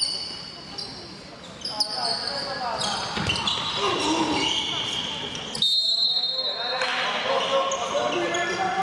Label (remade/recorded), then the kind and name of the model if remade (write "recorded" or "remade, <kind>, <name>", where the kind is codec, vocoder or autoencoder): recorded